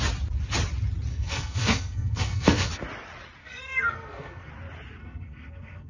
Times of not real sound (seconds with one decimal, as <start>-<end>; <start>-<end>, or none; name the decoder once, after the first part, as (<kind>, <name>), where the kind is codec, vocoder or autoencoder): 1.1-2.7 (codec, SNAC); 3.4-4.5; 5.0-5.9